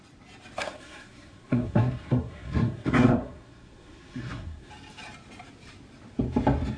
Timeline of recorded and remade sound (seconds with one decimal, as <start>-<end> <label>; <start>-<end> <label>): 0.0-0.6 recorded; 0.6-4.7 remade; 4.7-6.8 recorded